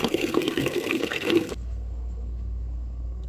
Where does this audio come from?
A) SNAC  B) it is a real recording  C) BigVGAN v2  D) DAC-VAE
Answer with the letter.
A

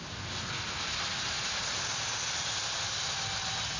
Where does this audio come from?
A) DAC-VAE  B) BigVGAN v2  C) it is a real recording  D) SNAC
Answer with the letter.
C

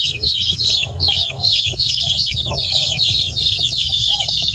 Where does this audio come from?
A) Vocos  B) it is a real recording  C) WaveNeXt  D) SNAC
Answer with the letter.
D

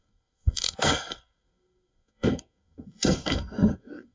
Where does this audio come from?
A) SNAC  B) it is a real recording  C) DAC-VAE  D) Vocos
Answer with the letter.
A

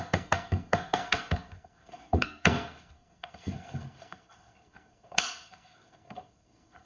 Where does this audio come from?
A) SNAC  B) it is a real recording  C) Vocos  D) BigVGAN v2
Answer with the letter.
A